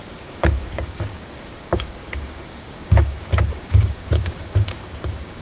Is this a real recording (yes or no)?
no